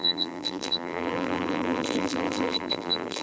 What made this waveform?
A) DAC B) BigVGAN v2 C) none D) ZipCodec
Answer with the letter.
B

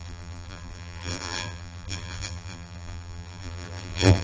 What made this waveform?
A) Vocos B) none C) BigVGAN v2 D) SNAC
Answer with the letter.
C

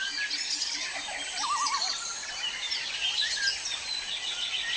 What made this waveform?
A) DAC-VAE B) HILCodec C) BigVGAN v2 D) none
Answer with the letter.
C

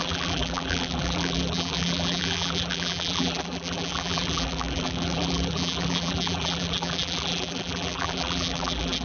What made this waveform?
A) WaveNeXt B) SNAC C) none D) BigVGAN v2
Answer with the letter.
D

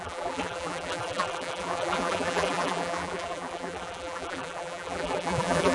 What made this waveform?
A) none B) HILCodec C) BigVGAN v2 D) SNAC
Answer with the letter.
C